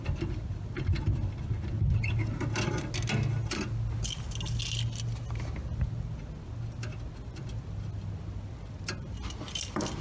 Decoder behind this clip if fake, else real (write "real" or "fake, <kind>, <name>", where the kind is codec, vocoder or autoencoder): real